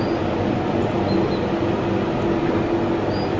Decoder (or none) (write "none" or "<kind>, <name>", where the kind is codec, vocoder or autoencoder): none